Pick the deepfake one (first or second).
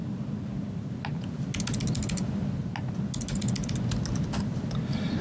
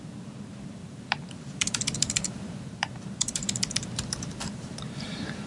second